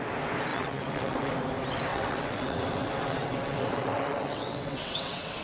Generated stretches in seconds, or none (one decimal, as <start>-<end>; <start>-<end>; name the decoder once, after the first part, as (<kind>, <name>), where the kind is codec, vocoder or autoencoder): 0.5-1.3 (vocoder, WaveNeXt); 1.9-5.4